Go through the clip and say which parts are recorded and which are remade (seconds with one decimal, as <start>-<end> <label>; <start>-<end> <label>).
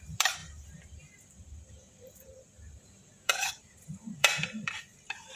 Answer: 0.0-5.4 remade